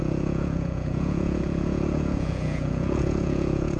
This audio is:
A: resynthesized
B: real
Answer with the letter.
A